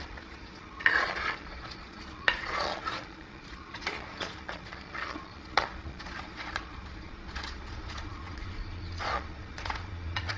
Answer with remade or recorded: remade